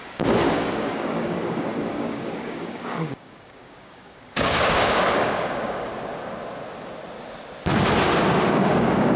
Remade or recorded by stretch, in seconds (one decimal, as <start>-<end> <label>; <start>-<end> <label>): 0.0-5.9 remade; 5.9-8.5 recorded; 8.5-9.2 remade